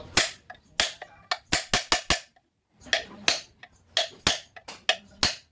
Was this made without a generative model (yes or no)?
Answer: yes